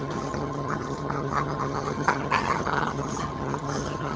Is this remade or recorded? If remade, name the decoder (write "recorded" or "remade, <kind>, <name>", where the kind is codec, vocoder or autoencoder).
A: remade, vocoder, HiFi-GAN